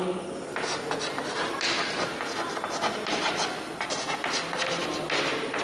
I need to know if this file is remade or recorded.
recorded